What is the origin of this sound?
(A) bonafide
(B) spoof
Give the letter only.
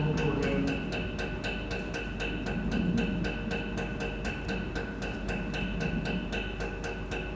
A